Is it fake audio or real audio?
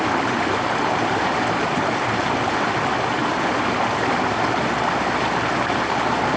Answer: real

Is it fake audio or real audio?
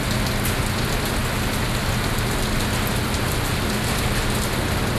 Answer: real